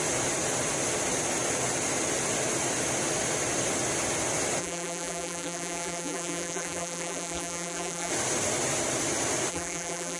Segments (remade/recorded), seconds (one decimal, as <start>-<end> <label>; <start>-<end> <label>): 0.0-4.6 recorded; 4.6-8.1 remade; 8.1-9.5 recorded; 9.5-10.2 remade